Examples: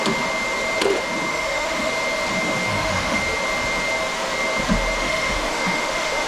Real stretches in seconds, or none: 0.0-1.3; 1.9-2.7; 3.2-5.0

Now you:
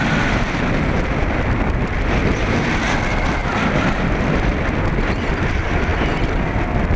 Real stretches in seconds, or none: 0.0-3.4; 5.3-5.9; 6.6-7.0